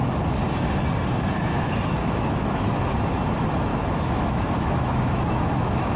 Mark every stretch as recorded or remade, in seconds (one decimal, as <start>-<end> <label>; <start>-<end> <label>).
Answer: 0.0-2.0 recorded; 2.0-2.6 remade; 2.6-3.7 recorded; 3.7-6.0 remade

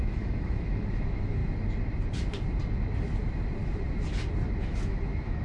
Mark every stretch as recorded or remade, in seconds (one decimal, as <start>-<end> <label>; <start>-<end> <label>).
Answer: 0.0-1.4 remade; 1.4-4.6 recorded; 4.6-5.4 remade

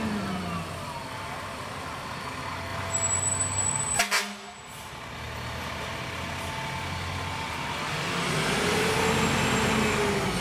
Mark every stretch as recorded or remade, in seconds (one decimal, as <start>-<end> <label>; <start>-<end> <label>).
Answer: 0.0-10.4 recorded